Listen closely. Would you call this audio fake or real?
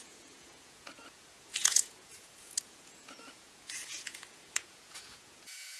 fake